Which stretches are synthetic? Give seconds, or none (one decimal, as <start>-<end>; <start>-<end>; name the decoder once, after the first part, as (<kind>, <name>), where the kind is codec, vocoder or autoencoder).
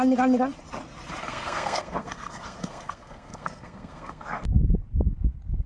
1.2-4.6 (codec, SNAC)